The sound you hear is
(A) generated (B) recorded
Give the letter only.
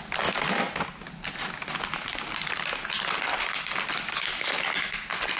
B